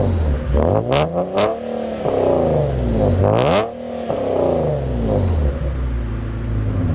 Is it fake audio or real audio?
real